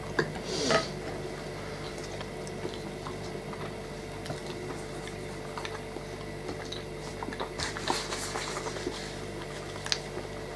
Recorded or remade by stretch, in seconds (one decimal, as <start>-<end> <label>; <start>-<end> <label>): 0.0-10.6 recorded